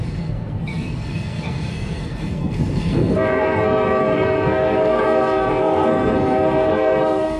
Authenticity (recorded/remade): remade